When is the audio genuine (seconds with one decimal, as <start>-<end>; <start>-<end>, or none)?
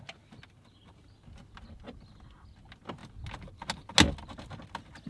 0.0-5.1